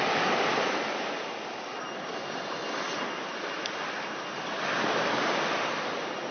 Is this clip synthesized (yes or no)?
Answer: no